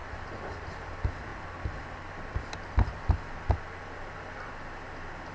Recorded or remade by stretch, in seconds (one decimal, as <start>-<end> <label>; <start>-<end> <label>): 0.0-5.3 recorded